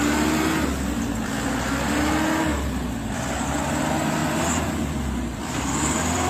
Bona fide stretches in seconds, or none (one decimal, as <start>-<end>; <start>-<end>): 0.0-4.2